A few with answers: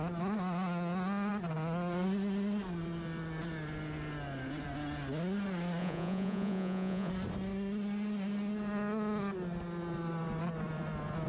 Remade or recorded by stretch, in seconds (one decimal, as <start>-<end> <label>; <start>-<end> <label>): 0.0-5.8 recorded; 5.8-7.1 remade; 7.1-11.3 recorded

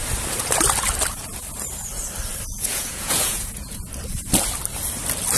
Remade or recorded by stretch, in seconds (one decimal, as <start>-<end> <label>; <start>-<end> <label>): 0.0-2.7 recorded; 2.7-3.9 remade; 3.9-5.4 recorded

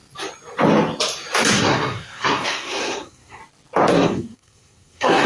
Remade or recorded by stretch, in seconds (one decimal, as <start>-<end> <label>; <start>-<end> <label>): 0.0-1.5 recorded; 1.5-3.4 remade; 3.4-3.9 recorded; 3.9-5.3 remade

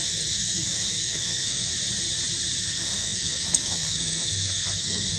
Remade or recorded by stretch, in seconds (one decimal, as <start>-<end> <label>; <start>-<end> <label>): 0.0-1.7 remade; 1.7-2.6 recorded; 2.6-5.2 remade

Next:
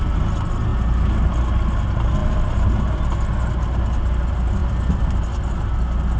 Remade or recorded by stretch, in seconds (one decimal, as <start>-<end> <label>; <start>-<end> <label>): 0.0-6.2 recorded

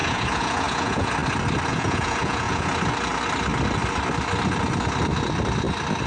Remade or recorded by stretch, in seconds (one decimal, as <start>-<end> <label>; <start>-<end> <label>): 0.0-1.1 remade; 1.1-1.7 recorded; 1.7-2.7 remade; 2.7-6.1 recorded

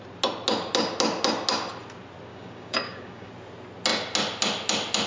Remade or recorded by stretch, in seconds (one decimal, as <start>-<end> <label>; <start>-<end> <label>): 0.0-2.3 recorded; 2.3-3.3 remade; 3.3-5.1 recorded

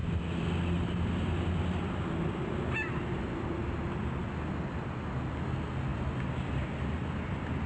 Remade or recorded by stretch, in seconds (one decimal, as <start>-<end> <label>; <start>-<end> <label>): 0.0-7.7 recorded